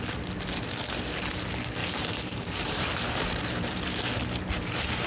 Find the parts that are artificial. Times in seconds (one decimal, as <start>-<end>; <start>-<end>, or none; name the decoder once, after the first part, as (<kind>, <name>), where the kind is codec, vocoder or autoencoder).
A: 1.8-4.0 (vocoder, BigVGAN v2)